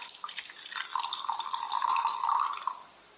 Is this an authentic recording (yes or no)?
yes